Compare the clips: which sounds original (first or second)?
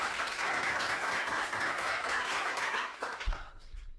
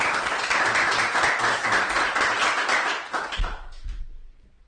second